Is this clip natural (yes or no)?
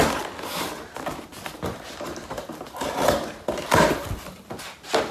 yes